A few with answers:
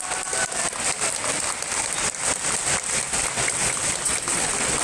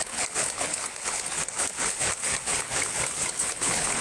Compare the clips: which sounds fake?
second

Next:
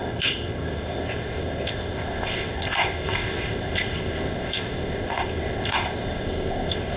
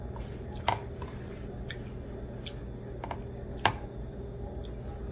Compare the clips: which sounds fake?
first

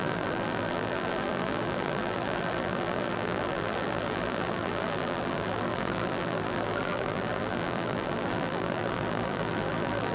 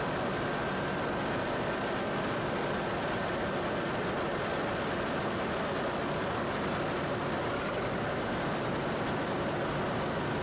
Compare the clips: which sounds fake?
first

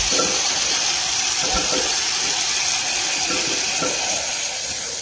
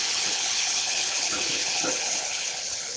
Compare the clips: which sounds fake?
second